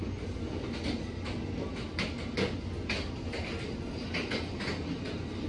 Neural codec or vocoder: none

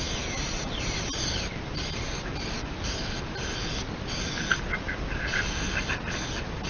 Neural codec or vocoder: none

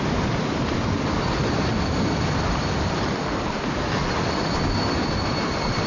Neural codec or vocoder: none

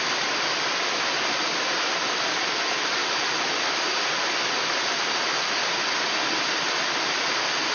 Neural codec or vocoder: none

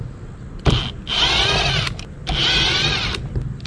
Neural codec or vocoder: none